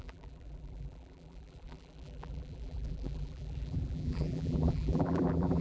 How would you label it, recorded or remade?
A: remade